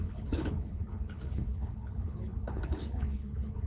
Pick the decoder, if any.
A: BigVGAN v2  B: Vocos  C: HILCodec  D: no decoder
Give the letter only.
C